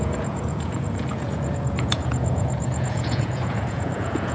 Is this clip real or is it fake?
fake